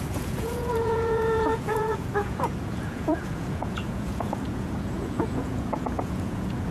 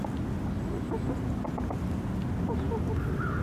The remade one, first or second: first